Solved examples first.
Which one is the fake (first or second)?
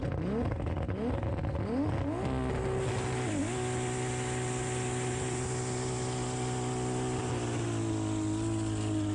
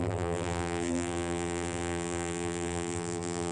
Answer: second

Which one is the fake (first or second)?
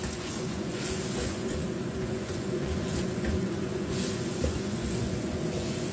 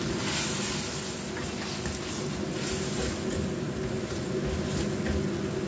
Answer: first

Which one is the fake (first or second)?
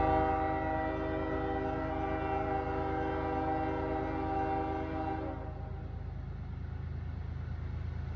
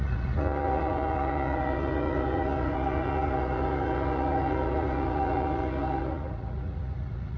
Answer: second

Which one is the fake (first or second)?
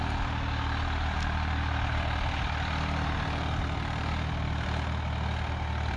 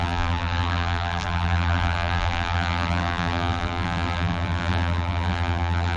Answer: second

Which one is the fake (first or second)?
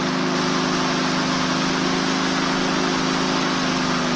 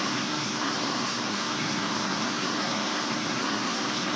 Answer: second